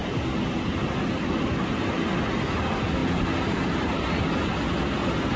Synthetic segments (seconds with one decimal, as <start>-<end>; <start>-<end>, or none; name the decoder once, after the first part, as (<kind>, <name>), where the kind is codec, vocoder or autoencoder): none